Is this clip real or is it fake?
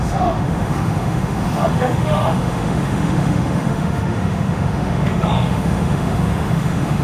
fake